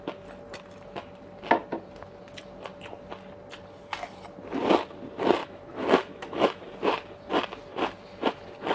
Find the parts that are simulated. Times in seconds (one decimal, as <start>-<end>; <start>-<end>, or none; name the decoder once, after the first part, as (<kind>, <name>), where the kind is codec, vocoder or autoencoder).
5.4-6.6 (autoencoder, DAC-VAE)